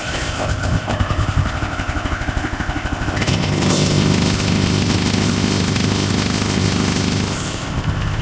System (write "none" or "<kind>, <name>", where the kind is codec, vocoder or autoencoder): codec, ZipCodec